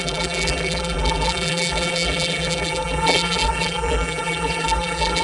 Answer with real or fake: fake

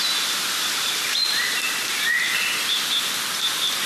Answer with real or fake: real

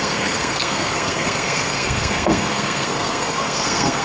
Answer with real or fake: fake